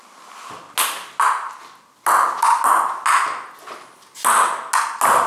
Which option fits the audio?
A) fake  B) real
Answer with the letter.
B